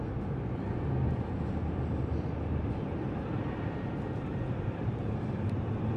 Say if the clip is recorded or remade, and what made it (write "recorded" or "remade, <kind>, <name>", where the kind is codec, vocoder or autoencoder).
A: remade, vocoder, BigVGAN v2